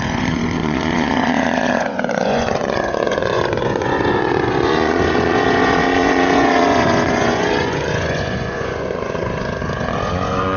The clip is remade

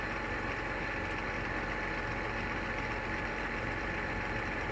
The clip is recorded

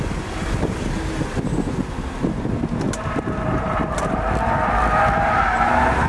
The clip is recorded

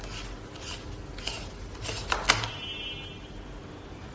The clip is recorded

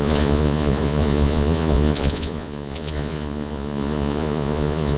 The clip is remade